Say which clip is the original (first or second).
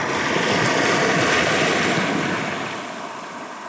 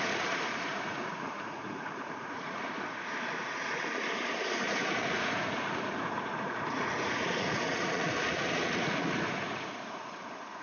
first